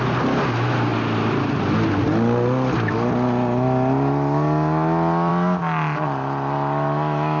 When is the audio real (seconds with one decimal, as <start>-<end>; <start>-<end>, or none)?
0.0-7.4